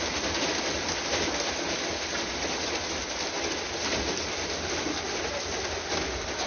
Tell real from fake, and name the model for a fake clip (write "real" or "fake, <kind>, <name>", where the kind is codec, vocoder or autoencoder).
fake, vocoder, BigVGAN v2